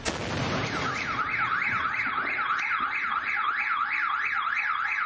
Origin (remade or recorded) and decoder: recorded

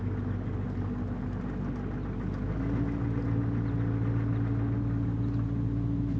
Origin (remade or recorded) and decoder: recorded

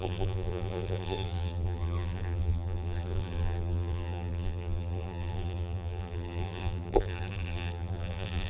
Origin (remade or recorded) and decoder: remade, vocoder, BigVGAN v2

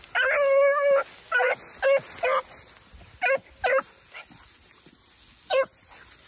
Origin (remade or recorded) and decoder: recorded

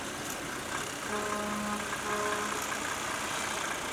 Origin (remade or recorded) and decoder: recorded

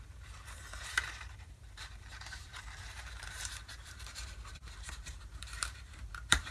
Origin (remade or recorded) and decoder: remade, vocoder, BigVGAN v2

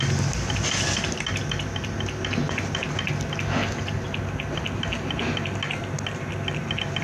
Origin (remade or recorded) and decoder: recorded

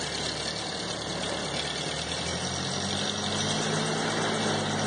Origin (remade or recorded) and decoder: recorded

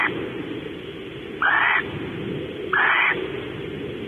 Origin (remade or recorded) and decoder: recorded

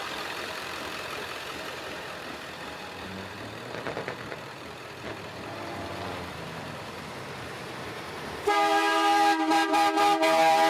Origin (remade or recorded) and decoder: remade, vocoder, BigVGAN v2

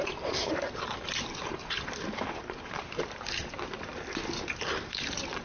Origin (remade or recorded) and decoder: remade, vocoder, BigVGAN v2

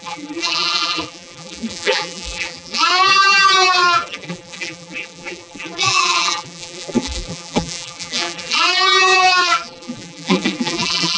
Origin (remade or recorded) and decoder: remade, vocoder, BigVGAN v2